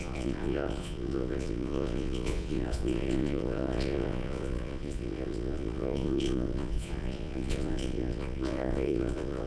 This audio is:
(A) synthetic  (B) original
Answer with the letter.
A